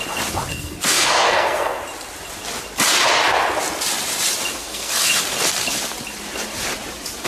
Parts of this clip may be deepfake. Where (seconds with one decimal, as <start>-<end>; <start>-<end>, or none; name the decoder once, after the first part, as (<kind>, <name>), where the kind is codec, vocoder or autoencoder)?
0.5-1.8 (codec, SNAC); 4.6-5.1